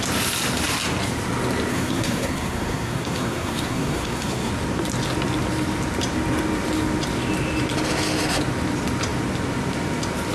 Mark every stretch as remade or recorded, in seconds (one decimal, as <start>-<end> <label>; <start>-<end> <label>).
0.0-1.7 recorded; 1.7-4.5 remade; 4.5-10.3 recorded

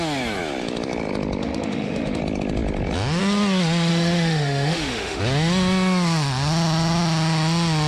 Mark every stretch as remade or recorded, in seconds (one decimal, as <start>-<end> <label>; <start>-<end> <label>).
0.0-1.4 recorded; 1.4-2.2 remade; 2.2-3.9 recorded; 3.9-5.2 remade; 5.2-7.9 recorded

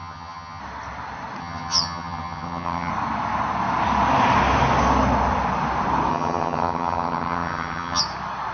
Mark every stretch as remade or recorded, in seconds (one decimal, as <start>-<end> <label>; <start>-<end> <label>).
0.0-0.6 remade; 0.6-1.4 recorded; 1.4-2.9 remade; 2.9-6.1 recorded; 6.1-8.0 remade; 8.0-8.5 recorded

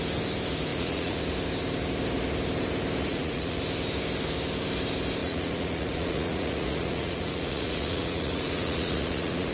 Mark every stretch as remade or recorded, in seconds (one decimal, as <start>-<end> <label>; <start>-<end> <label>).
0.0-0.7 recorded; 0.7-1.2 remade; 1.2-3.1 recorded; 3.1-3.6 remade; 3.6-5.2 recorded; 5.2-9.5 remade

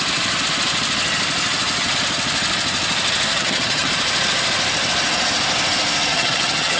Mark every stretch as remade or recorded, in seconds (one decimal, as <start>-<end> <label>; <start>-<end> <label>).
0.0-3.3 recorded; 3.3-3.9 remade; 3.9-6.1 recorded; 6.1-6.8 remade

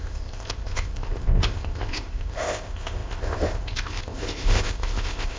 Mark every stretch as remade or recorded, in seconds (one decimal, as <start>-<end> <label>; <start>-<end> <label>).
0.0-5.4 remade

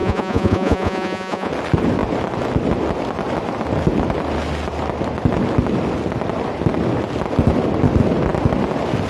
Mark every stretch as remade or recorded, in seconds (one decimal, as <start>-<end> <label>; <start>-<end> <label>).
0.0-1.5 remade; 1.5-9.1 recorded